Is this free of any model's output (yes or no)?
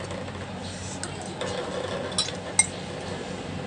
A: yes